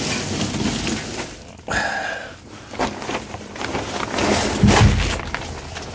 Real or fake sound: real